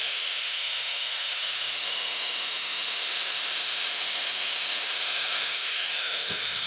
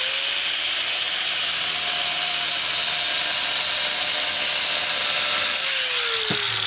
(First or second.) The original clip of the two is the second